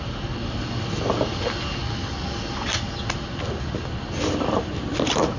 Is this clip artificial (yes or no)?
no